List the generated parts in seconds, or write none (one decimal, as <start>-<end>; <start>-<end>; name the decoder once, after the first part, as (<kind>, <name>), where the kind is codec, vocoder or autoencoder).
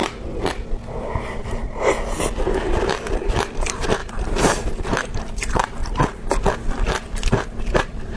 1.2-1.6 (vocoder, BigVGAN v2); 3.5-4.0; 4.8-5.8; 7.7-8.2